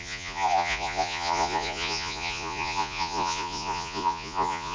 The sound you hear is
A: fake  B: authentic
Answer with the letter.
A